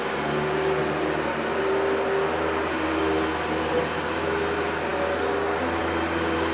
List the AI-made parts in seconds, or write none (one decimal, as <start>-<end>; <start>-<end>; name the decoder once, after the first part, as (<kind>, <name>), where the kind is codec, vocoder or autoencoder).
none